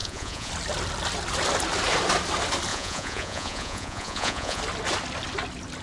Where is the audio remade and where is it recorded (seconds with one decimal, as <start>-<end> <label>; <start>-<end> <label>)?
0.0-0.5 remade; 0.5-2.7 recorded; 2.7-4.6 remade; 4.6-5.8 recorded

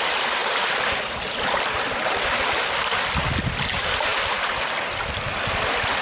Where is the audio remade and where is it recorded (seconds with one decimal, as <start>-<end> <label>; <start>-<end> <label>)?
0.0-6.0 recorded

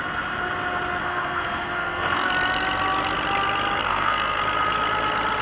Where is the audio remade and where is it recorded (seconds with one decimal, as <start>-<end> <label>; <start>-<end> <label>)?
0.0-1.0 recorded; 1.0-2.3 remade; 2.3-3.8 recorded; 3.8-4.4 remade; 4.4-5.4 recorded

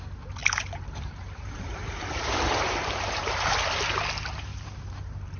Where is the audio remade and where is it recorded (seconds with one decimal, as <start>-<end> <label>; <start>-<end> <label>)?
0.0-0.4 recorded; 0.4-3.6 remade; 3.6-4.5 recorded; 4.5-5.4 remade

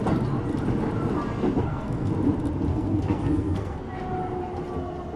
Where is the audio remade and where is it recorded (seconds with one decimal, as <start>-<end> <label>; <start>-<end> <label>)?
0.0-1.6 recorded; 1.6-2.1 remade; 2.1-2.7 recorded; 2.7-3.8 remade; 3.8-5.2 recorded

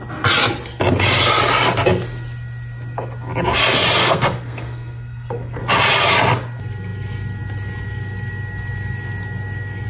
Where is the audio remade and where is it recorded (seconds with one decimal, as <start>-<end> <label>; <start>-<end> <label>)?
0.0-4.0 recorded; 4.0-5.6 remade; 5.6-9.9 recorded

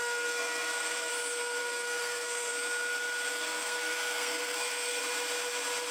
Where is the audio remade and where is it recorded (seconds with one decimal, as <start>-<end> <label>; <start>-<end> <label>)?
0.0-1.1 remade; 1.1-1.6 recorded; 1.6-2.5 remade; 2.5-3.3 recorded; 3.3-5.0 remade; 5.0-5.9 recorded

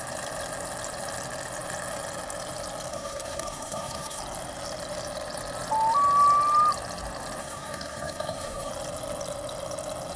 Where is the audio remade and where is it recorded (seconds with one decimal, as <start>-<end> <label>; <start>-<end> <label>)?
0.0-2.9 recorded; 2.9-4.2 remade; 4.2-7.4 recorded; 7.4-8.7 remade; 8.7-10.2 recorded